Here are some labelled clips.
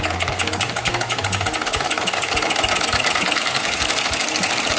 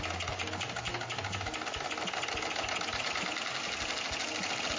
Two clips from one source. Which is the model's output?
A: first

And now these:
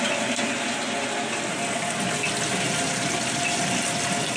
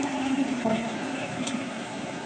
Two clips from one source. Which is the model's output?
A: second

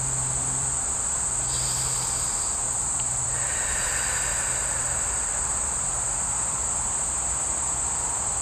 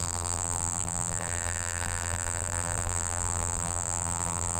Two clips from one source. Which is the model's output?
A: second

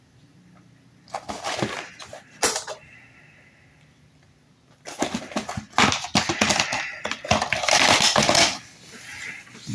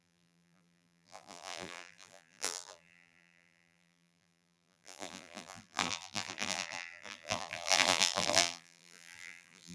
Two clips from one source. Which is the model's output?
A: second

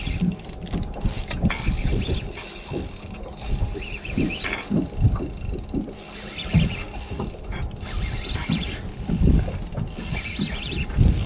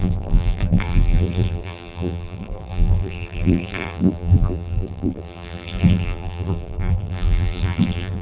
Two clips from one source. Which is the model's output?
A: second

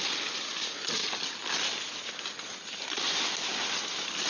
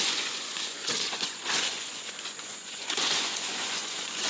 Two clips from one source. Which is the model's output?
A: second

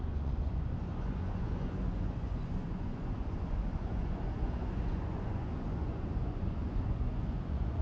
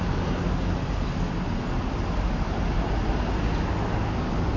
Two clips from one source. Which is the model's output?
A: first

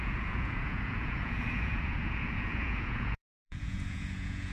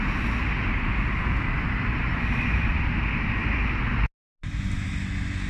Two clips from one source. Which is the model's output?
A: first